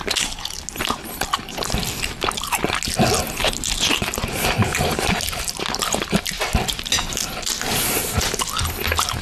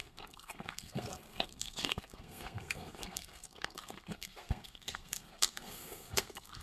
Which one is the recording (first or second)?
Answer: first